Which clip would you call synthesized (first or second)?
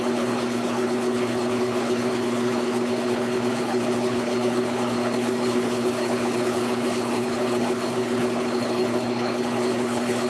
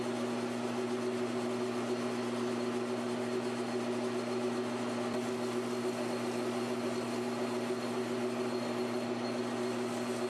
first